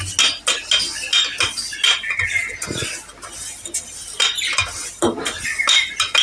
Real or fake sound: real